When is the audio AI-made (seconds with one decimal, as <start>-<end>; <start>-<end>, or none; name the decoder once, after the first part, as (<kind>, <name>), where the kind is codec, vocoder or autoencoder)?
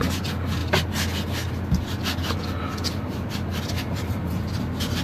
none